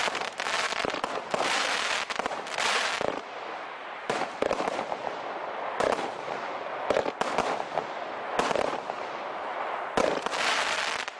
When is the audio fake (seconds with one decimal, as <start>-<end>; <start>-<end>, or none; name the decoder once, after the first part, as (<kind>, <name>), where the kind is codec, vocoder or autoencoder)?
3.8-6.1 (vocoder, BigVGAN v2)